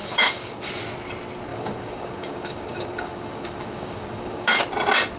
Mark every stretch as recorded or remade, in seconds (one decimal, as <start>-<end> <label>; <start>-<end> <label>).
0.0-0.7 remade; 0.7-1.5 recorded; 1.5-4.6 remade; 4.6-5.2 recorded